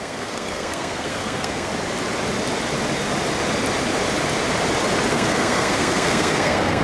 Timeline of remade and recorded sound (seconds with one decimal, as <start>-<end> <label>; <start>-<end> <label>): 0.0-1.7 remade; 1.7-5.1 recorded; 5.1-6.8 remade

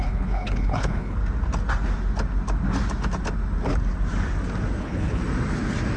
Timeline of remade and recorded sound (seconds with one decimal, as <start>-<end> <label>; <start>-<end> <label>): 0.0-1.2 remade; 1.2-4.8 recorded; 4.8-5.2 remade; 5.2-6.0 recorded

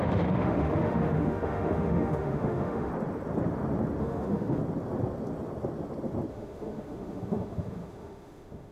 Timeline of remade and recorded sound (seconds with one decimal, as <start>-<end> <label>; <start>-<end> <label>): 0.0-2.9 remade; 2.9-4.0 recorded; 4.0-4.6 remade; 4.6-6.3 recorded; 6.3-8.7 remade

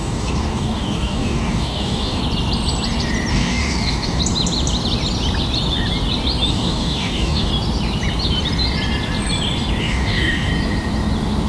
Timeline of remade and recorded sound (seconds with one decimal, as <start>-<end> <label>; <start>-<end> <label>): 0.0-2.2 remade; 2.2-3.3 recorded; 3.3-4.2 remade; 4.2-6.5 recorded; 6.5-7.5 remade; 7.5-9.8 recorded; 9.8-10.5 remade; 10.5-11.5 recorded

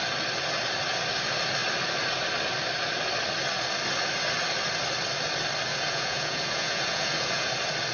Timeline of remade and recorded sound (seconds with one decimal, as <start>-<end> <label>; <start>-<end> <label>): 0.0-5.7 recorded; 5.7-7.5 remade; 7.5-7.9 recorded

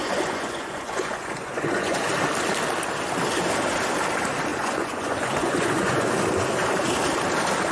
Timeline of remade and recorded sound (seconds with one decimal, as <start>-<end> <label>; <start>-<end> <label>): 0.0-2.1 remade; 2.1-4.5 recorded; 4.5-6.1 remade; 6.1-7.7 recorded

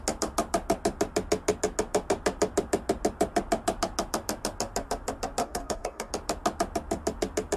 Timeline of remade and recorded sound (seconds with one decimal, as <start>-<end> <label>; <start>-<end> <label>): 0.0-5.4 recorded; 5.4-6.1 remade; 6.1-7.6 recorded

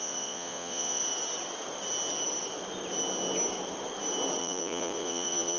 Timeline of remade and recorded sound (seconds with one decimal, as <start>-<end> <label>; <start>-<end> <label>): 0.0-1.0 remade; 1.0-4.4 recorded; 4.4-5.6 remade